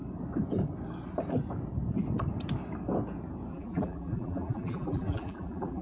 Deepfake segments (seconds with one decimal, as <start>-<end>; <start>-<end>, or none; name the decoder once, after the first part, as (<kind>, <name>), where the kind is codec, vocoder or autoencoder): 3.5-5.8 (vocoder, BigVGAN v2)